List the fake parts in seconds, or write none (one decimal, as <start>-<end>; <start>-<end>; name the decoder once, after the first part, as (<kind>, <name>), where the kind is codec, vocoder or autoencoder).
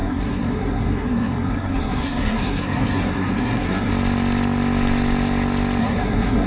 0.0-3.9 (codec, SNAC); 5.8-6.5